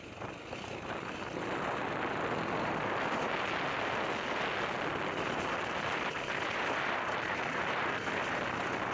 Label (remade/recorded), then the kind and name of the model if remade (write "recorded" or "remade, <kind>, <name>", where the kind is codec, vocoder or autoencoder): recorded